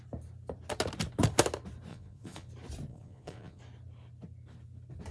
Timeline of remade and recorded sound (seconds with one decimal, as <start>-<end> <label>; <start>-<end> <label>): 0.0-1.9 recorded; 1.9-2.5 remade; 2.5-2.9 recorded; 2.9-3.6 remade; 3.6-5.1 recorded